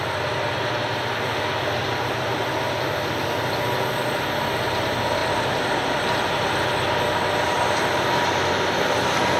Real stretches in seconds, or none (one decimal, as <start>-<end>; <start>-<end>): 0.0-9.4